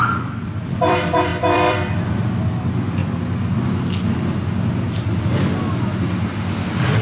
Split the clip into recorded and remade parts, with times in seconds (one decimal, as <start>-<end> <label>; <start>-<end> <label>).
0.0-3.0 remade; 3.0-7.0 recorded